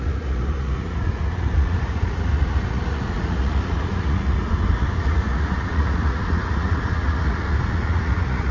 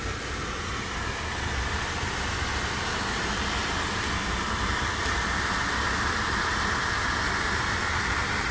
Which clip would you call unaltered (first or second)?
second